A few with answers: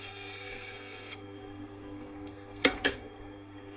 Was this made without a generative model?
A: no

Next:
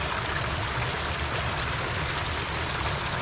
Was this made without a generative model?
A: yes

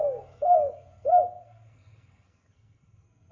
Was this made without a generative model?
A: no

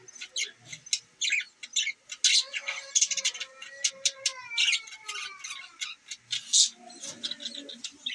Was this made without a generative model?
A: yes